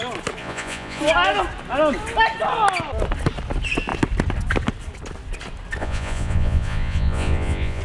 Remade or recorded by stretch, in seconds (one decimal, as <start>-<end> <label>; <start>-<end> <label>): 0.0-0.4 recorded; 0.4-1.0 remade; 1.0-5.8 recorded; 5.8-7.8 remade